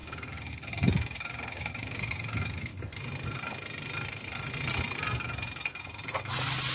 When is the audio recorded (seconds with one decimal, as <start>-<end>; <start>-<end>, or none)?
2.7-6.7